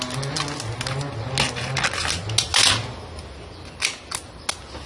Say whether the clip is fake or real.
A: real